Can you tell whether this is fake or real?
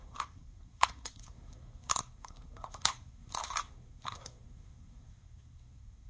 fake